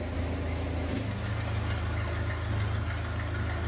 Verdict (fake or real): real